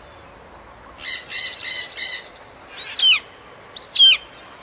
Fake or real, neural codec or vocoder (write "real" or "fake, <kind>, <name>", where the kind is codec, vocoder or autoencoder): real